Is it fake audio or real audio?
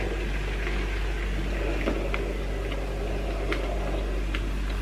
real